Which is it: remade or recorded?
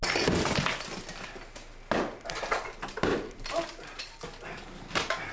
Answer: recorded